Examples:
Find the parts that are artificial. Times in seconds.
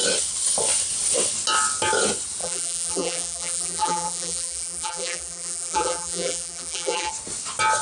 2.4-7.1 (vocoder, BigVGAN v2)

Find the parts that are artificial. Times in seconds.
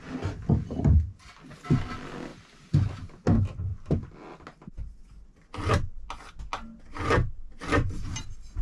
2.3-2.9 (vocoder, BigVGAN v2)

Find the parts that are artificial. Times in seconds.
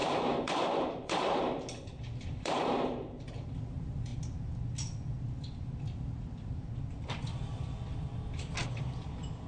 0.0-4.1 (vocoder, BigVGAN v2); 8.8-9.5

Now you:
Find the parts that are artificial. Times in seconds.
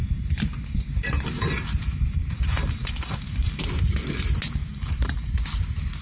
0.0-3.6 (vocoder, BigVGAN v2); 4.6-5.3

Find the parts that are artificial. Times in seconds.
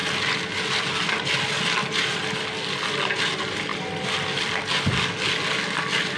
3.7-4.5 (vocoder, BigVGAN v2)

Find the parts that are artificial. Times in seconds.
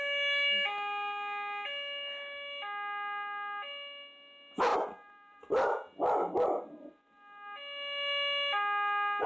4.7-5.4 (vocoder, BigVGAN v2)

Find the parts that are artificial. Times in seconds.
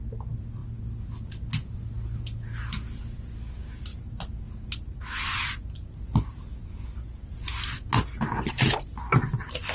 none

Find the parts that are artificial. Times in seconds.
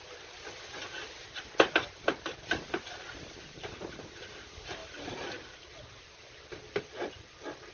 4.8-6.3 (vocoder, BigVGAN v2)